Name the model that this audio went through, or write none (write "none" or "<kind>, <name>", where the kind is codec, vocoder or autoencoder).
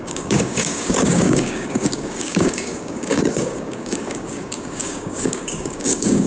codec, DAC